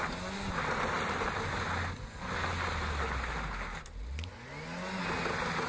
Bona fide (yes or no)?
yes